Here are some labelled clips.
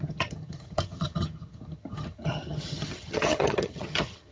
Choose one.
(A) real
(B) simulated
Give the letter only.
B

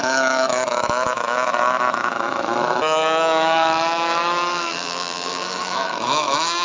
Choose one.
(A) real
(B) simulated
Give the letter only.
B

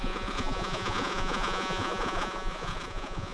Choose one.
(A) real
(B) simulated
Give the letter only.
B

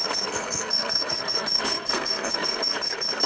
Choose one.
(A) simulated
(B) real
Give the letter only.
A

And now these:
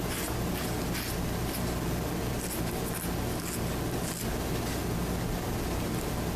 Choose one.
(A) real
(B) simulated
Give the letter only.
A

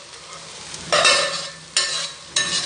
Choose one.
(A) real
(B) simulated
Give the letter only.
A